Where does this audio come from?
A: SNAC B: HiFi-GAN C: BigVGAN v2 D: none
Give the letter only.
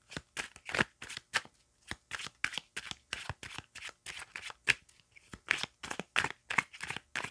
D